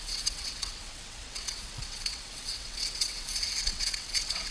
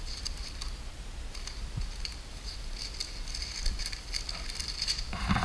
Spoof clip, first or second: first